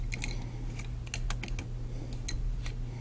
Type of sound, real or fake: real